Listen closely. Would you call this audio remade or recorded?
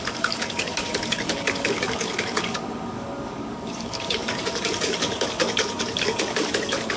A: remade